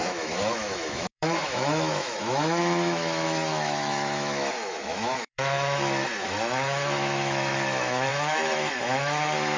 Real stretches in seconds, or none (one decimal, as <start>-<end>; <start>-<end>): none